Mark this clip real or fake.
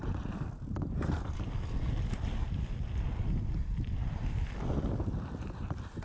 fake